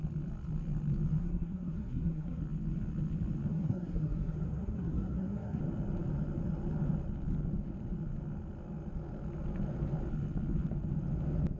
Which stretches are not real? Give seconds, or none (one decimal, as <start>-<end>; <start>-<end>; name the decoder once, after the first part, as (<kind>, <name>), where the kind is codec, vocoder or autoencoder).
1.2-2.4 (codec, SNAC); 3.5-5.6